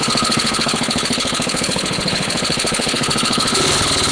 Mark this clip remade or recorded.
remade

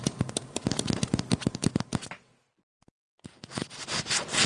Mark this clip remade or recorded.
recorded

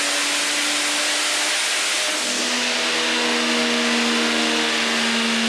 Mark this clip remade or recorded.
recorded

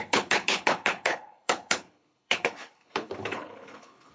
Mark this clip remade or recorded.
remade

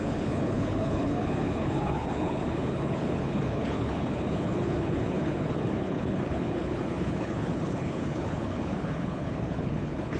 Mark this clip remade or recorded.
remade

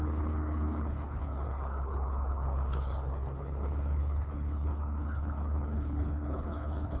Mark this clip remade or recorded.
remade